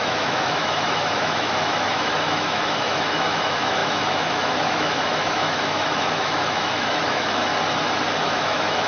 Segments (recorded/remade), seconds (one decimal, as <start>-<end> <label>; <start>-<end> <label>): 0.0-7.5 remade; 7.5-8.2 recorded; 8.2-8.9 remade